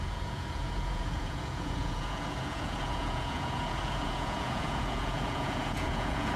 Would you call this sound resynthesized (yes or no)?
yes